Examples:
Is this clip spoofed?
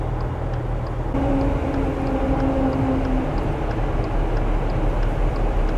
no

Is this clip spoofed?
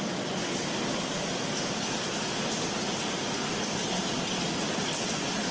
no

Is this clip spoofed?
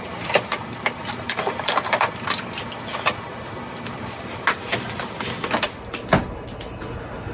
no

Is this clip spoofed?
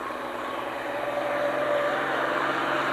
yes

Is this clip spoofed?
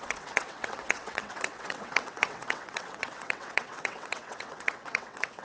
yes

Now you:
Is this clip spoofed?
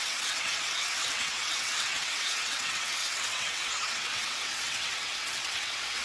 yes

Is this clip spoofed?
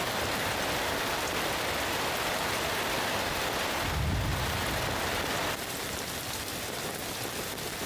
no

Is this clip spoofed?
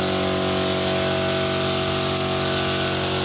no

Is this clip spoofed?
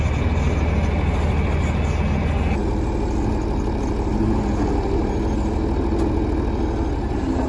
no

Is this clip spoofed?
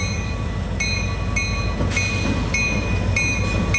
no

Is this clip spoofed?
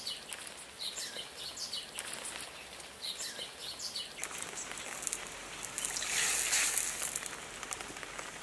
no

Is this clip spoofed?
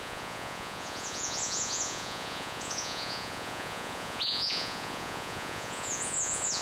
yes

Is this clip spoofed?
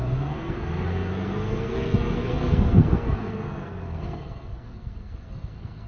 yes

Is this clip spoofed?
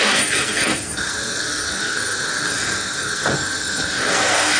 yes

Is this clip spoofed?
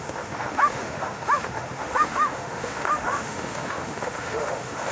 yes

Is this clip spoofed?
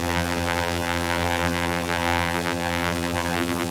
yes